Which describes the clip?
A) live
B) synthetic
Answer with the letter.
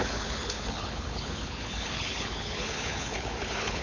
B